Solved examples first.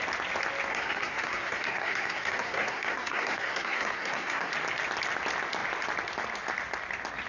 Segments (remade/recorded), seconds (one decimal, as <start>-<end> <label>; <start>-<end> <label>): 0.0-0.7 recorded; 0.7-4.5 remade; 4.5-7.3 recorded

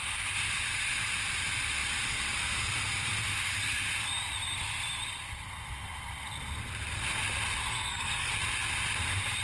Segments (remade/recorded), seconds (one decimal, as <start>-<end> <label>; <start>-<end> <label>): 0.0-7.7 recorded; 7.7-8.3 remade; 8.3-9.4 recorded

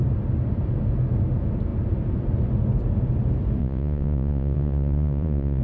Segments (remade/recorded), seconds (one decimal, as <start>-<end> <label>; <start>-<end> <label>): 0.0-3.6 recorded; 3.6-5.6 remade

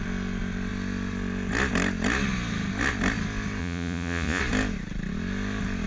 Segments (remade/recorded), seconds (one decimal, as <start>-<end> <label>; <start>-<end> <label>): 0.0-3.6 recorded; 3.6-4.4 remade; 4.4-5.9 recorded